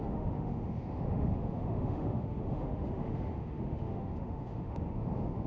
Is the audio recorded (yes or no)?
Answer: no